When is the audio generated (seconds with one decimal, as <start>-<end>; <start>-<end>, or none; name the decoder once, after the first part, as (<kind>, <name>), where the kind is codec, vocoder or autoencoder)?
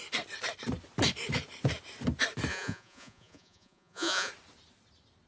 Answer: 2.5-4.3 (vocoder, Vocos)